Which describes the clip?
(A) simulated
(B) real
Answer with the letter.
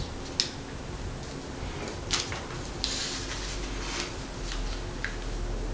B